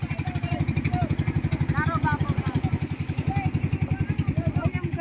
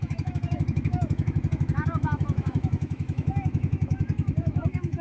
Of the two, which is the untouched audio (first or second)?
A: first